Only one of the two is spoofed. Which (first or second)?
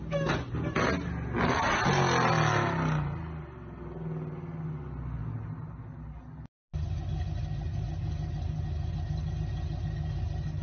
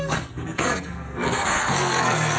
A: second